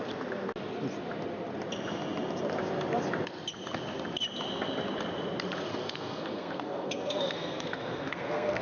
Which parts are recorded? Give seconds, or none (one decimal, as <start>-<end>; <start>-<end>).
0.0-5.7